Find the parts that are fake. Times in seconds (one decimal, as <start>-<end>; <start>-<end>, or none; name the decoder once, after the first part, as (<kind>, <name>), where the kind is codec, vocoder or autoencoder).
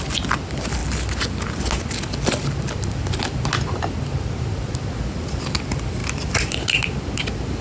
none